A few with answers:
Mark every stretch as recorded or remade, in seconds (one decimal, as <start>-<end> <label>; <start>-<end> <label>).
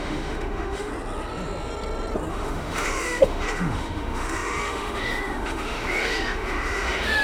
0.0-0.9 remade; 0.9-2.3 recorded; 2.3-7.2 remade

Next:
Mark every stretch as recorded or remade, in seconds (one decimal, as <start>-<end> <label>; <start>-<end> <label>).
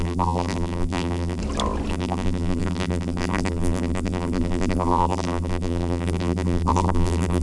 0.0-1.4 remade; 1.4-1.9 recorded; 1.9-7.4 remade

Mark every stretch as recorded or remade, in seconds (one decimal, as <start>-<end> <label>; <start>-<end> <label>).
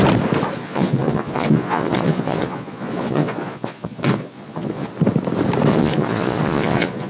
0.0-0.6 recorded; 0.6-4.9 remade; 4.9-5.7 recorded; 5.7-7.1 remade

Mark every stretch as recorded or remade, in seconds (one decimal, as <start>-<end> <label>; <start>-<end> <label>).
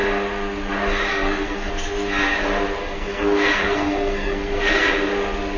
0.0-1.1 recorded; 1.1-1.7 remade; 1.7-2.8 recorded; 2.8-4.9 remade; 4.9-5.6 recorded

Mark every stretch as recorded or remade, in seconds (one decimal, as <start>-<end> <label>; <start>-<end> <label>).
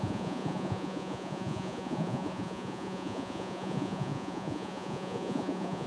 0.0-5.9 remade